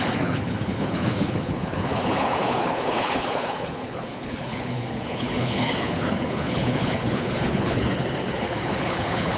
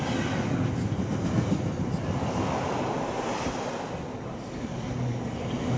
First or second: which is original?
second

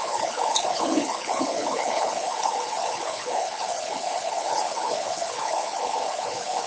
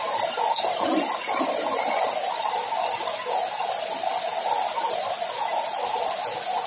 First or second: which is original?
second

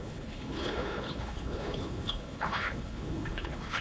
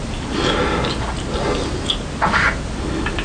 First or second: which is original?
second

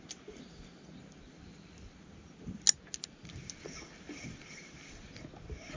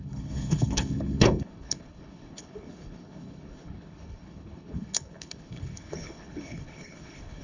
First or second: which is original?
first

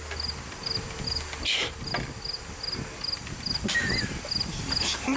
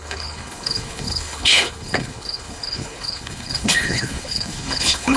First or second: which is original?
first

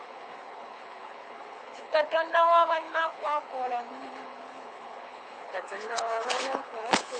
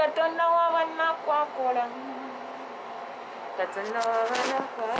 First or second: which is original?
second